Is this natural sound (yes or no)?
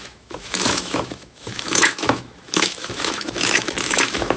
no